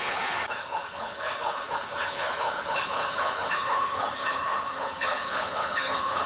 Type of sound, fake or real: fake